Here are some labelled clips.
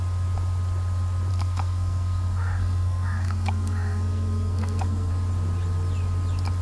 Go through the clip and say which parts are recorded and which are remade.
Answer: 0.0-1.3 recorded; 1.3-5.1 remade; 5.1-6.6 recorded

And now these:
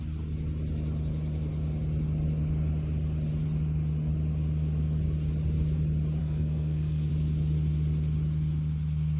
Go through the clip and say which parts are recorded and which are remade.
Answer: 0.0-6.2 recorded; 6.2-7.1 remade; 7.1-9.2 recorded

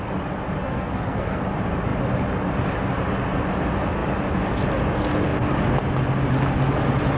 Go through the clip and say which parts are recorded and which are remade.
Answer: 0.0-0.6 recorded; 0.6-1.4 remade; 1.4-7.2 recorded

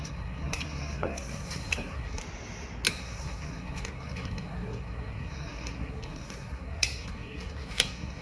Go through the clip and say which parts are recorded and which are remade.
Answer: 0.0-2.2 remade; 2.2-2.9 recorded; 2.9-8.2 remade

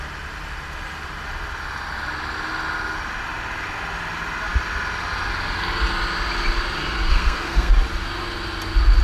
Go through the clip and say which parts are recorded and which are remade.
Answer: 0.0-7.1 recorded; 7.1-7.7 remade; 7.7-9.0 recorded

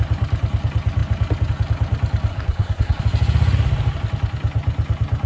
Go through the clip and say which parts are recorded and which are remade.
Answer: 0.0-2.3 recorded; 2.3-3.0 remade; 3.0-5.3 recorded

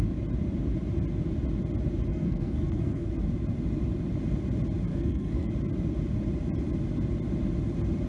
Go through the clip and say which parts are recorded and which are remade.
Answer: 0.0-2.1 recorded; 2.1-3.1 remade; 3.1-4.9 recorded; 4.9-5.5 remade; 5.5-8.1 recorded